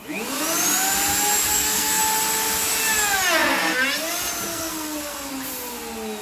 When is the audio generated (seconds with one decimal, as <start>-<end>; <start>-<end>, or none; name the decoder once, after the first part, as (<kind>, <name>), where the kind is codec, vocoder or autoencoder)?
1.5-2.0 (codec, SNAC); 4.5-5.3